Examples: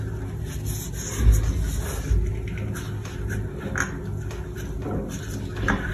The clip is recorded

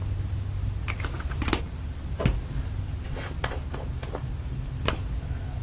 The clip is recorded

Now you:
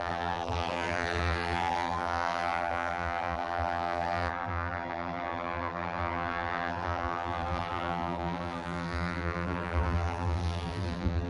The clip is remade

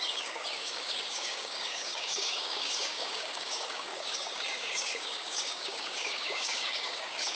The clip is remade